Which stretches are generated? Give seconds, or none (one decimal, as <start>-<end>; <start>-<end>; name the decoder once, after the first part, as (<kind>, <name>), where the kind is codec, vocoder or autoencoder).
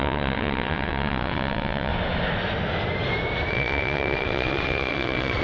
0.0-1.9 (vocoder, WaveNeXt); 3.5-5.4